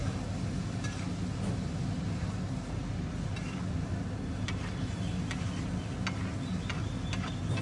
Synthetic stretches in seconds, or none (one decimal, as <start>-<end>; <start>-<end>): none